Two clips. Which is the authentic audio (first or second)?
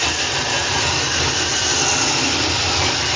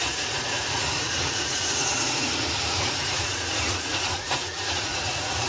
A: first